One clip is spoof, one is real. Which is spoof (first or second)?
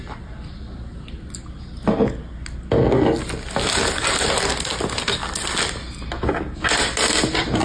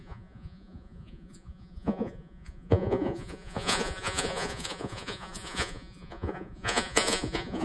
second